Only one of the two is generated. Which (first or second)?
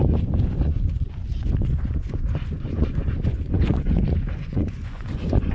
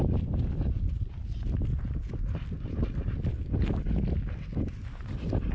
first